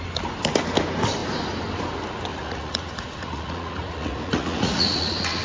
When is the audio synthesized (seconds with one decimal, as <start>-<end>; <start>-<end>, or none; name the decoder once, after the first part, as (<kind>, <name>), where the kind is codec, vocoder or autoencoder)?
2.3-5.4 (vocoder, Vocos)